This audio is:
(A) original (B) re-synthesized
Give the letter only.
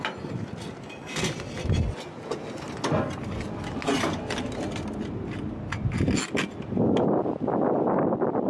A